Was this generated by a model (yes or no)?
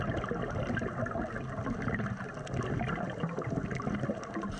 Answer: no